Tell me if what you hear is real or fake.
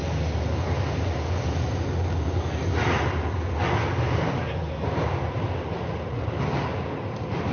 real